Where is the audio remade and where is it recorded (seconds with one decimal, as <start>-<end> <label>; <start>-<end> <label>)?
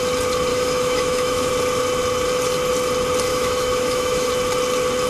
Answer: 0.0-0.5 recorded; 0.5-1.5 remade; 1.5-3.3 recorded; 3.3-4.3 remade; 4.3-5.1 recorded